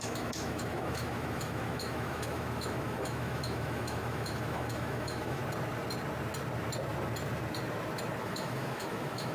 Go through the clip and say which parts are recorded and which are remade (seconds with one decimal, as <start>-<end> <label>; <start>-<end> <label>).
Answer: 0.0-5.4 remade; 5.4-8.2 recorded; 8.2-9.3 remade